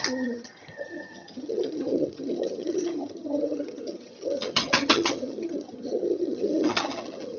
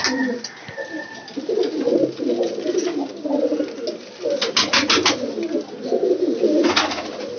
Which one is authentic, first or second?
second